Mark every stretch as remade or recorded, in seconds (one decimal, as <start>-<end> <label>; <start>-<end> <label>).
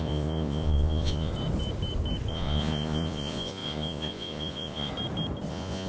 0.0-1.3 remade; 1.3-2.3 recorded; 2.3-4.9 remade; 4.9-5.5 recorded; 5.5-5.9 remade